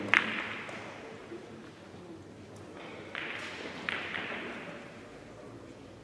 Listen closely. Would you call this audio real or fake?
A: real